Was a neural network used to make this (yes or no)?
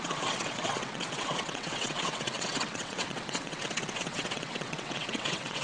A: yes